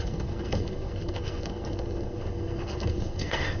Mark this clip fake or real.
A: fake